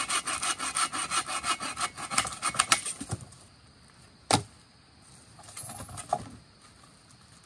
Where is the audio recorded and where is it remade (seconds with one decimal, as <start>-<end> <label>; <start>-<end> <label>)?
0.0-7.5 recorded